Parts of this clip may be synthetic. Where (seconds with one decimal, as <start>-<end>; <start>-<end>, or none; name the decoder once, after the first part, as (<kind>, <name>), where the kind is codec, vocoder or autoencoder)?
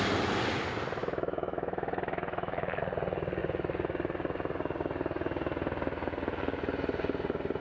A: 1.0-2.8 (autoencoder, DAC-VAE)